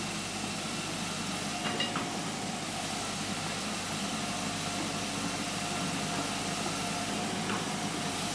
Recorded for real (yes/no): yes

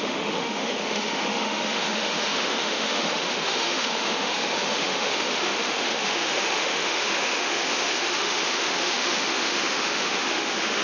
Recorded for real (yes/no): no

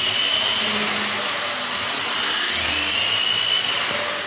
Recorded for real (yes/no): yes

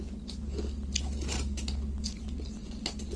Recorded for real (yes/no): yes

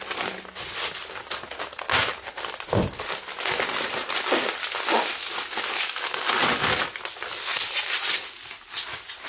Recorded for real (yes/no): yes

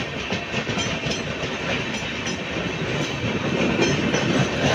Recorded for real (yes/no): yes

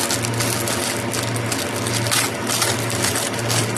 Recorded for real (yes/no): yes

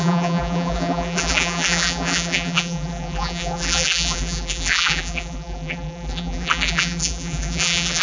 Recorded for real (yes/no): no